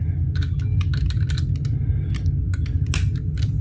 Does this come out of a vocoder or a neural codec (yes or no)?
no